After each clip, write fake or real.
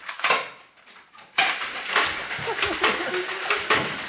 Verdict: real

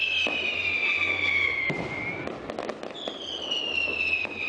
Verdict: real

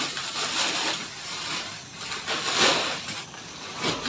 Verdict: real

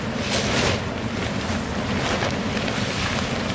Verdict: real